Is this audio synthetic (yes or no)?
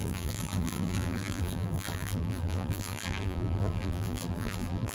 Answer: yes